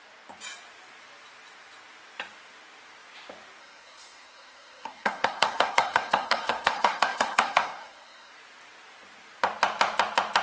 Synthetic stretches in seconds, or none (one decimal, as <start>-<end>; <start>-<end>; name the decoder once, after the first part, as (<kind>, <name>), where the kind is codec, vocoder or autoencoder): 3.6-8.3 (codec, SNAC)